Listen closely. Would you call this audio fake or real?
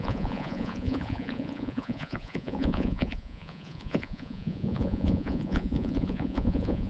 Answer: fake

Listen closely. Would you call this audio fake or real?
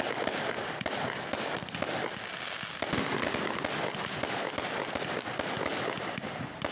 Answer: real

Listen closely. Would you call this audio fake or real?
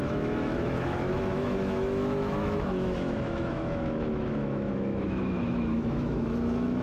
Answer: fake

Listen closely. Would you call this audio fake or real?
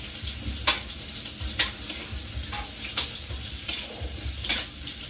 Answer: real